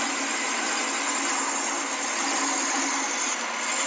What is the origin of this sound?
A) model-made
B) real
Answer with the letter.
B